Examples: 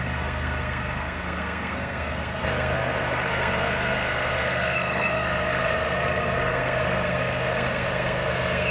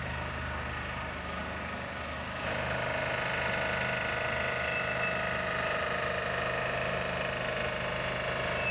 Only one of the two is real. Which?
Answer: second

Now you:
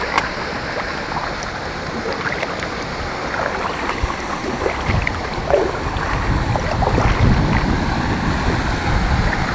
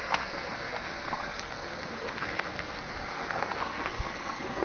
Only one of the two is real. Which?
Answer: first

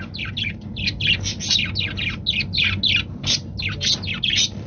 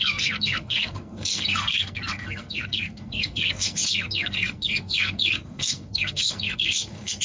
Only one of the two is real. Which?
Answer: first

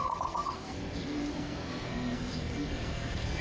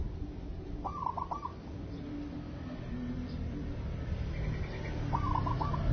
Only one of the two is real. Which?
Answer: second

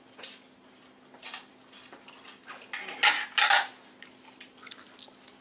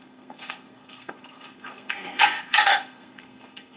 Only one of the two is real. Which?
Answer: first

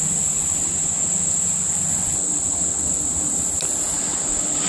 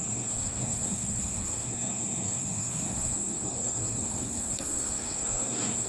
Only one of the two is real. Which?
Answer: first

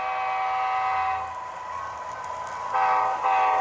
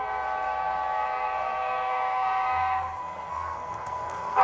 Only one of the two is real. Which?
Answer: first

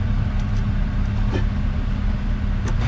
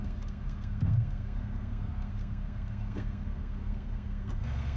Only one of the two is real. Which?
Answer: first